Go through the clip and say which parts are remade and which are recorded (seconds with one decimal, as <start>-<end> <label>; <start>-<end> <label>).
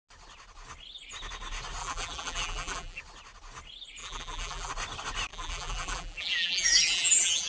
0.0-1.8 recorded; 1.8-3.0 remade; 3.0-4.0 recorded; 4.0-4.7 remade; 4.7-5.3 recorded; 5.3-7.5 remade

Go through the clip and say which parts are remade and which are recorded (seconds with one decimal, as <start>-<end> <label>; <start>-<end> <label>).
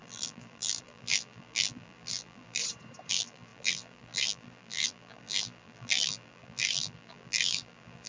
0.0-2.6 remade; 2.6-3.1 recorded; 3.1-8.1 remade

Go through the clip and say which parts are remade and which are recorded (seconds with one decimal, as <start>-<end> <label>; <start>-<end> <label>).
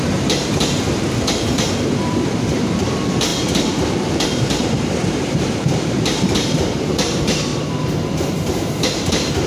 0.0-7.5 remade; 7.5-8.8 recorded; 8.8-9.5 remade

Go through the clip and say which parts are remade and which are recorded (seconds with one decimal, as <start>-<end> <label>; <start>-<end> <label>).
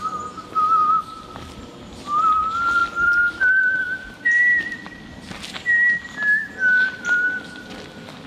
0.0-8.3 recorded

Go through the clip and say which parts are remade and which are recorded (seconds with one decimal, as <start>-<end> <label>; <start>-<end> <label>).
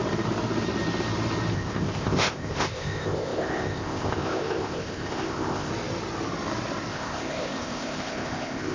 0.0-1.5 recorded; 1.5-5.7 remade; 5.7-6.9 recorded; 6.9-8.7 remade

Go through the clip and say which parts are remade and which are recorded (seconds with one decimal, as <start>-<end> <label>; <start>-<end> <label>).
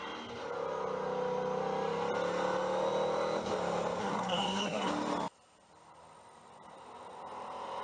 0.0-4.0 recorded; 4.0-4.9 remade; 4.9-7.8 recorded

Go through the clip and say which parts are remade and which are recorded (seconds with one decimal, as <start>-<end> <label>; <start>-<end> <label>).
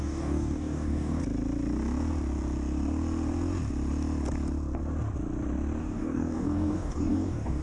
0.0-1.2 remade; 1.2-5.8 recorded; 5.8-7.6 remade